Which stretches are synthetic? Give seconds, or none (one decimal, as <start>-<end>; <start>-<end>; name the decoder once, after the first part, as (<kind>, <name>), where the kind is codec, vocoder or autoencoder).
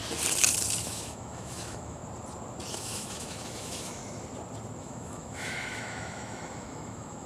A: 0.8-2.0 (autoencoder, DAC-VAE); 2.7-4.0; 4.8-7.3